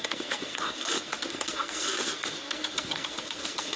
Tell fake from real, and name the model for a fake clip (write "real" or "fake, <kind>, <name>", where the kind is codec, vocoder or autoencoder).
fake, codec, SNAC